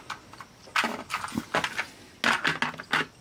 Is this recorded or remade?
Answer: recorded